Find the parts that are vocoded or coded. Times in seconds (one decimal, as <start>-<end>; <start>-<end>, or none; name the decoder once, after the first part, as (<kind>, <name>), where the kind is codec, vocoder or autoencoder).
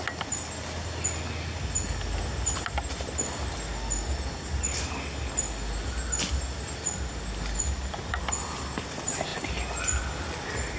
none